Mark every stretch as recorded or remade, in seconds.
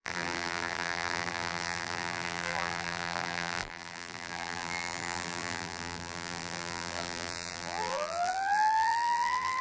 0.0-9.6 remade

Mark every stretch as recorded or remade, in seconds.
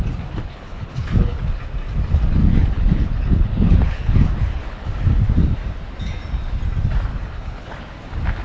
0.0-0.4 recorded; 0.4-1.6 remade; 1.6-2.4 recorded; 2.4-4.9 remade; 4.9-7.1 recorded; 7.1-7.8 remade; 7.8-8.4 recorded